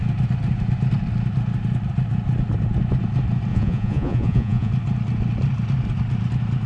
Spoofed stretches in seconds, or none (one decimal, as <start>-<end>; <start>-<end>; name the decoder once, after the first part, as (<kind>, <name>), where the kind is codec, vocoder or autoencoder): 3.5-4.7 (vocoder, Vocos)